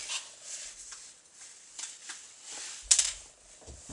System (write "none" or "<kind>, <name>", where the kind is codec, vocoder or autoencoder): none